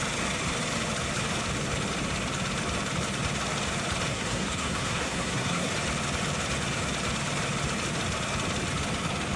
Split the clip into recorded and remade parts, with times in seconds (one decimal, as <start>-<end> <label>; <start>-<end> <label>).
0.0-4.1 recorded; 4.1-5.7 remade; 5.7-9.4 recorded

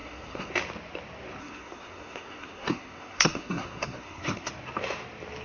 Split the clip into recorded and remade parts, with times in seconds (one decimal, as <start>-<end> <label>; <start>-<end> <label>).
0.0-0.5 remade; 0.5-1.4 recorded; 1.4-4.5 remade; 4.5-5.4 recorded

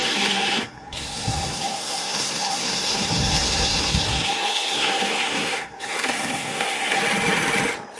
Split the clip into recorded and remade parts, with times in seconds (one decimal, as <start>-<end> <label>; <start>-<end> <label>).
0.0-7.0 remade; 7.0-8.0 recorded